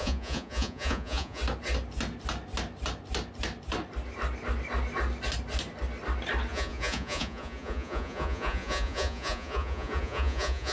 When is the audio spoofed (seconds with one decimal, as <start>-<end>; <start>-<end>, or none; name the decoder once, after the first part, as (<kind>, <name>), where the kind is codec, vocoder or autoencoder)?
0.0-1.4 (vocoder, Vocos); 6.5-10.7